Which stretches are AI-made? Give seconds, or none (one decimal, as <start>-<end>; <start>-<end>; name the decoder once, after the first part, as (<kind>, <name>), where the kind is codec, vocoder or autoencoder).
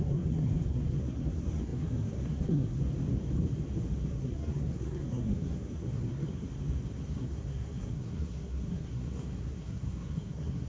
0.0-2.8 (codec, SNAC); 4.1-6.3; 7.2-10.7